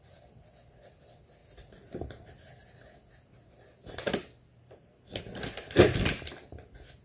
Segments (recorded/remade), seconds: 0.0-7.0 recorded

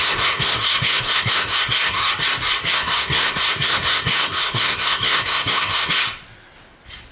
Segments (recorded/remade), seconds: 0.0-2.0 remade; 2.0-2.7 recorded; 2.7-6.0 remade; 6.0-7.1 recorded

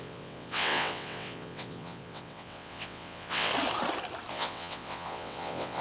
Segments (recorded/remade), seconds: 0.0-3.5 remade; 3.5-4.3 recorded; 4.3-5.8 remade

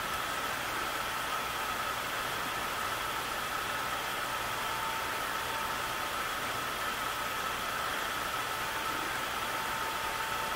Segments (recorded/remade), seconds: 0.0-10.6 recorded

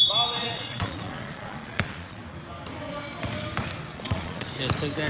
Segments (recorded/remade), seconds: 0.0-0.4 recorded; 0.4-2.2 remade; 2.2-3.9 recorded; 3.9-4.5 remade; 4.5-5.1 recorded